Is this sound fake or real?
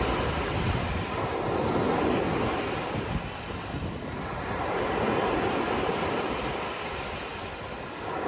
real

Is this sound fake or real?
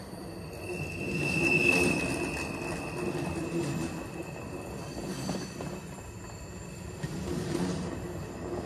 real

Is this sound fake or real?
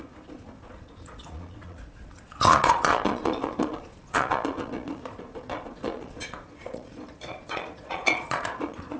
fake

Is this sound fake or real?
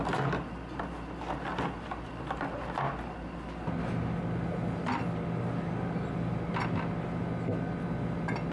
real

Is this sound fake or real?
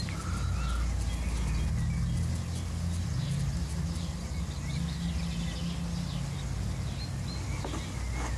real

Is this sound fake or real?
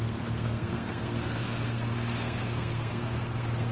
fake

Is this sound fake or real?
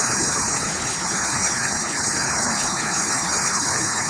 fake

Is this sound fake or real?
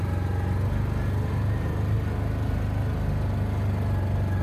real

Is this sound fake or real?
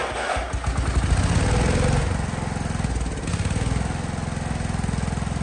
real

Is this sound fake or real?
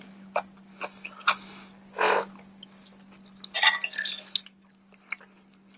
real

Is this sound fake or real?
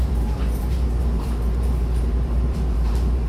fake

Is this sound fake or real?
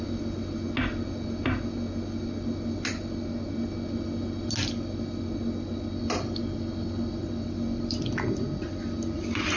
real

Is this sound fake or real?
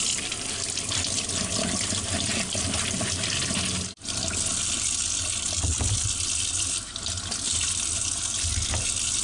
real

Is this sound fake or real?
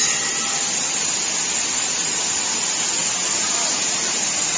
real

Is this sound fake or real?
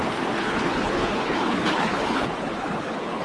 fake